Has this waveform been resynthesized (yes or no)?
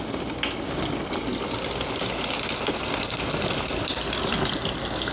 no